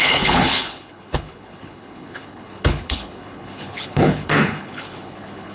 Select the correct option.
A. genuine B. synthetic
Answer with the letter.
B